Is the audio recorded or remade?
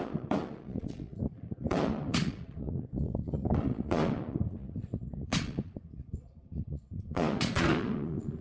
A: remade